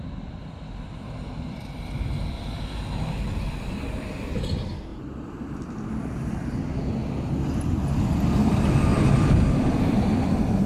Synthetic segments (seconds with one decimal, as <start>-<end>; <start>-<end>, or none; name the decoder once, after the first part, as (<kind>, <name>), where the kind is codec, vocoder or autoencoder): 4.9-5.9 (vocoder, BigVGAN v2); 8.9-10.7

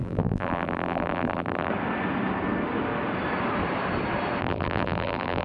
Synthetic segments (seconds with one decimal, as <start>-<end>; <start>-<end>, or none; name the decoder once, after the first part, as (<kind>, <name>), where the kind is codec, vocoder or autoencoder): 0.0-1.7 (vocoder, BigVGAN v2); 4.4-5.4

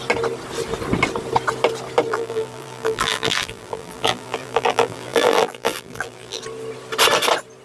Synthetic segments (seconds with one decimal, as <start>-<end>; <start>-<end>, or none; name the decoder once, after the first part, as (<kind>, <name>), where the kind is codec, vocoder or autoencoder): 2.1-6.4 (vocoder, BigVGAN v2)

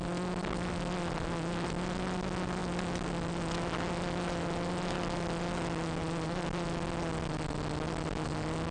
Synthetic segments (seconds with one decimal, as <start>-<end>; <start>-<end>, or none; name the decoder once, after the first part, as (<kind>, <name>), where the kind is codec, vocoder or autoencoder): none